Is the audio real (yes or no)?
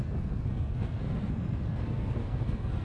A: no